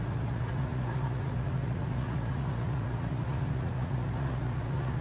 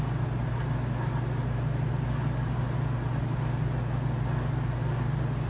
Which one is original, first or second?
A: second